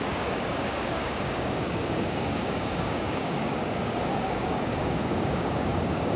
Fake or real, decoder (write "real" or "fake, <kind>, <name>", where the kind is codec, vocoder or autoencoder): fake, codec, DAC